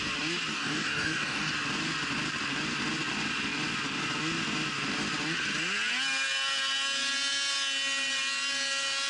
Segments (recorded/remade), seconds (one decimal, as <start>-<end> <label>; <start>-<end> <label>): 0.0-0.5 recorded; 0.5-1.5 remade; 1.5-9.1 recorded